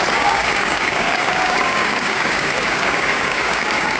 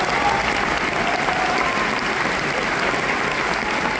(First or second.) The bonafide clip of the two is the second